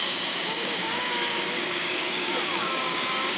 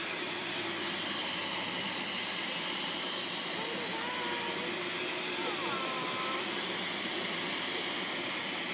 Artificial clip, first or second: first